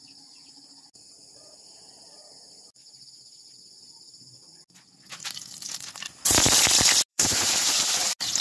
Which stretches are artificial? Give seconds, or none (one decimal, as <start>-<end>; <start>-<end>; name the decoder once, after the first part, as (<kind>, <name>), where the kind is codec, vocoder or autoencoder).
7.1-7.8 (vocoder, BigVGAN v2)